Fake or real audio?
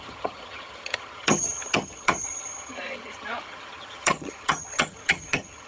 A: fake